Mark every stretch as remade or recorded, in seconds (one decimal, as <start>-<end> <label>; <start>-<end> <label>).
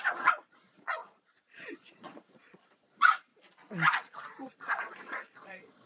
0.0-3.3 remade; 3.3-4.5 recorded; 4.5-5.9 remade